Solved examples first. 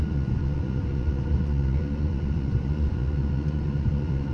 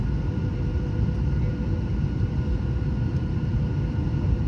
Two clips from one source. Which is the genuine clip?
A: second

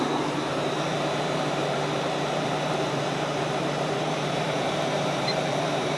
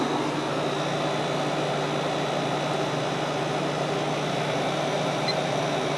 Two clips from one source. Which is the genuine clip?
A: second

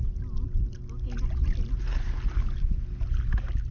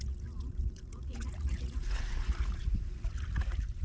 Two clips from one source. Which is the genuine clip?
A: first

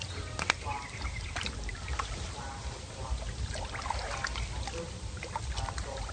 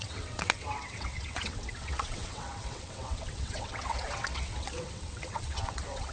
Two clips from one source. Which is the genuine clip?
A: first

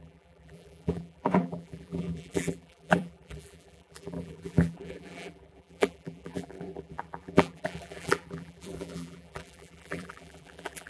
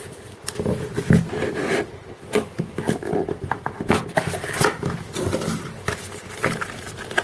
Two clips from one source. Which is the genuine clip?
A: second